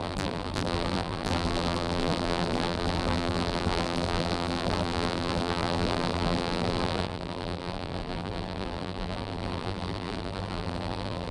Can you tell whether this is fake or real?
fake